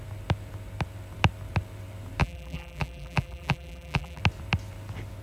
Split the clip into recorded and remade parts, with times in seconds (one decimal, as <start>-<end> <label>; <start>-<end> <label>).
0.0-2.2 recorded; 2.2-4.2 remade; 4.2-5.2 recorded